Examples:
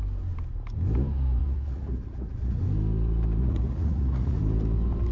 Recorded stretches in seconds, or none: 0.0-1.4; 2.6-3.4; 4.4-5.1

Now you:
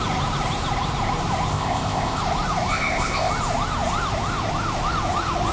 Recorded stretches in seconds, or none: 0.0-1.5; 2.2-2.7; 3.3-5.5

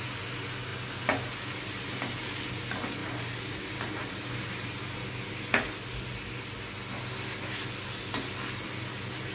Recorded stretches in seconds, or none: 0.0-3.0; 4.8-9.3

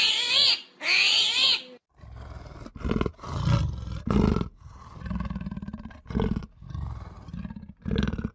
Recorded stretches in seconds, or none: 0.0-8.3

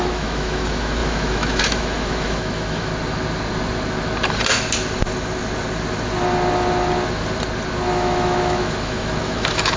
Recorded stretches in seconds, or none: 2.9-7.9

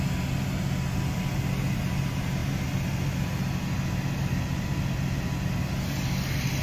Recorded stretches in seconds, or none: 0.0-6.6

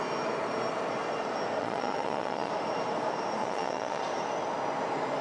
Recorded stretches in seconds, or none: 0.0-1.6; 2.5-3.4; 4.0-5.2

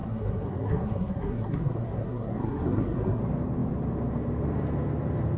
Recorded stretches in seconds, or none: 3.2-5.4